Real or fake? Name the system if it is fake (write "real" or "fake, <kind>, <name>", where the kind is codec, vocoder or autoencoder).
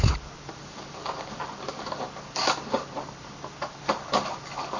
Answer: real